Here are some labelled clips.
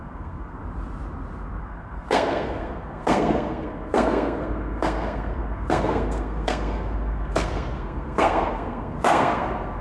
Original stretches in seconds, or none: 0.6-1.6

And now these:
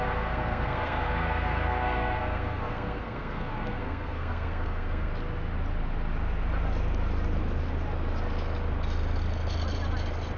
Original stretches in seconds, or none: 5.1-10.4

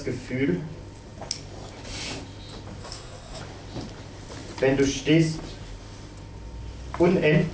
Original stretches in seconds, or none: 0.0-2.8; 3.4-7.5

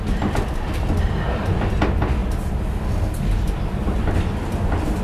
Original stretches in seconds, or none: 0.0-5.0

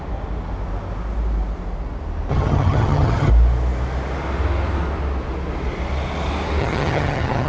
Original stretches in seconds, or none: 0.0-2.3; 3.3-6.6

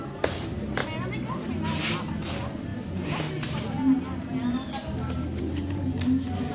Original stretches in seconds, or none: 0.0-6.5